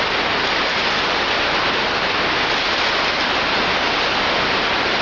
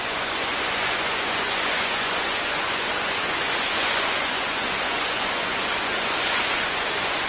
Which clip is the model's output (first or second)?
second